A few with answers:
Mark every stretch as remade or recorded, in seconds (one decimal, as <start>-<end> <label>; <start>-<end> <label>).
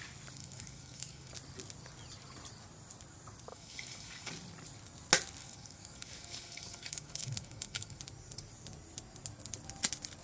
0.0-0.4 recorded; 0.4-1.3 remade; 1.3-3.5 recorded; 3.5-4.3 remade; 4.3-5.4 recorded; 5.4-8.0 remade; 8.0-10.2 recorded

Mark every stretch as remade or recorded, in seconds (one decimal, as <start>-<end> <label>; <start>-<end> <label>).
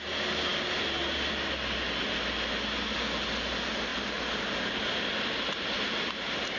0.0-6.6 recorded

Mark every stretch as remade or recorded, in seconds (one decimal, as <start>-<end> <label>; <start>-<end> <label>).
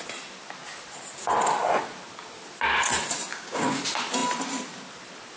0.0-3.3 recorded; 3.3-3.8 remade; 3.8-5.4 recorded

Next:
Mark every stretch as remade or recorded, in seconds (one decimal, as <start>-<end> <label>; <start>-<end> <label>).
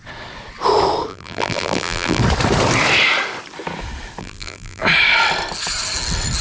0.0-1.1 recorded; 1.1-2.2 remade; 2.2-4.2 recorded; 4.2-4.8 remade; 4.8-6.4 recorded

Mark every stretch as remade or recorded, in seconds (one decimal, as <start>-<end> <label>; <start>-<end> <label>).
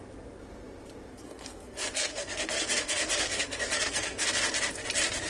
0.0-1.1 recorded; 1.1-4.3 remade; 4.3-5.3 recorded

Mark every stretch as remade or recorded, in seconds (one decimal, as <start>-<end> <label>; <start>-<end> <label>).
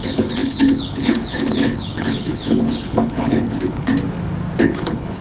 0.0-3.9 remade; 3.9-4.6 recorded; 4.6-5.2 remade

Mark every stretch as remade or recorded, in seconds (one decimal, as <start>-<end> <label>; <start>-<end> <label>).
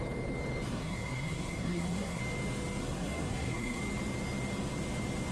0.0-0.7 recorded; 0.7-2.2 remade; 2.2-2.8 recorded; 2.8-3.8 remade; 3.8-5.3 recorded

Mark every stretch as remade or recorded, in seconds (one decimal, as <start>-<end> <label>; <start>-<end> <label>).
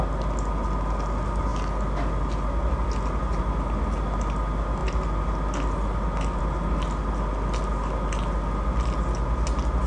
0.0-9.9 recorded